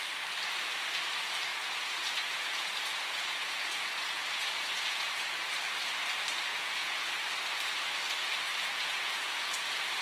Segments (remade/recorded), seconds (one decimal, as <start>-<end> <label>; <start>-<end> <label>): 0.0-1.5 recorded; 1.5-5.5 remade; 5.5-6.5 recorded; 6.5-7.1 remade; 7.1-8.5 recorded; 8.5-10.0 remade